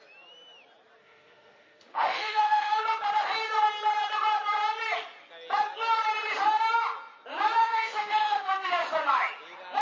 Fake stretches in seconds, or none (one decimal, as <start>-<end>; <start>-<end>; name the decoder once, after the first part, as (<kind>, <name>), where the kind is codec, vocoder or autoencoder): 1.0-2.8 (autoencoder, DAC-VAE); 7.6-8.7